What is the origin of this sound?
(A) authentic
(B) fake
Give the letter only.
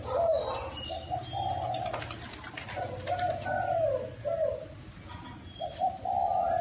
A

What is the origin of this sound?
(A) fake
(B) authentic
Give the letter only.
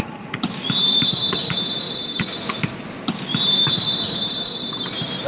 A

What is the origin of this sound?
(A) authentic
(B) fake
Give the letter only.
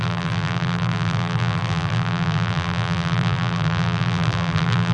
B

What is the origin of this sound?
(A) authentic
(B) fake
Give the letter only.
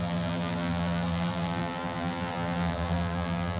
B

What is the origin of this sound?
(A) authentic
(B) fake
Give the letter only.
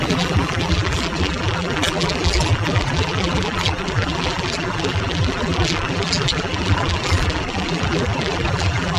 B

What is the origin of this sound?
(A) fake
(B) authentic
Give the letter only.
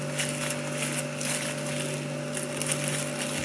B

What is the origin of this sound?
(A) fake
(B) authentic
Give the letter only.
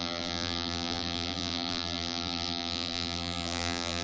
A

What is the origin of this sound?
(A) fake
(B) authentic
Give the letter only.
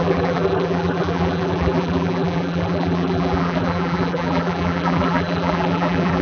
A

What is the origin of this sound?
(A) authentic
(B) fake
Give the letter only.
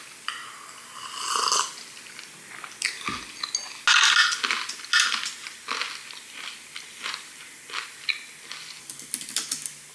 A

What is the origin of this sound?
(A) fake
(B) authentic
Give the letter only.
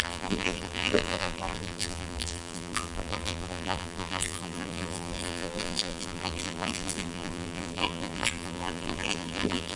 A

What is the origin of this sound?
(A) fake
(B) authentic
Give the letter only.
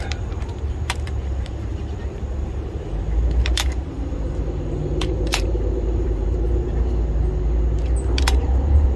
A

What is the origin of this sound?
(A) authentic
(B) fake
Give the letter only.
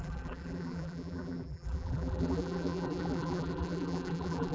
B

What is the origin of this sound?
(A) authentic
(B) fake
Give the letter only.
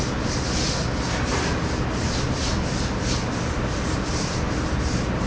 A